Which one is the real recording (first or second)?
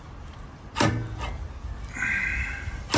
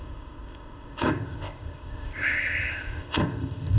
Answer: first